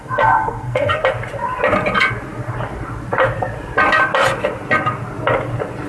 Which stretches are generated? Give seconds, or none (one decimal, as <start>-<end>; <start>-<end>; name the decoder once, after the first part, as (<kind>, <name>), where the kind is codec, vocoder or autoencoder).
0.0-1.0 (codec, SNAC)